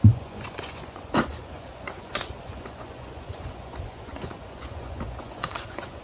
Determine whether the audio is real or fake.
fake